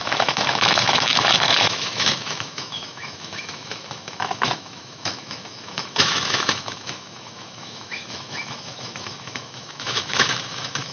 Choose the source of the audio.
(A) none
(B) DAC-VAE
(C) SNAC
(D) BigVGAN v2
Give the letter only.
B